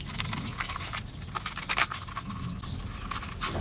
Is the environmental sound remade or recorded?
recorded